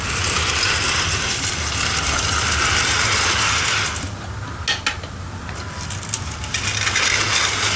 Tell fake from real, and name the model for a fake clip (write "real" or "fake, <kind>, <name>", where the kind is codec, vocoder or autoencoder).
real